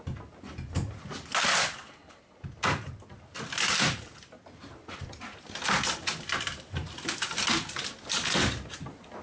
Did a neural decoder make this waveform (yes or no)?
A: no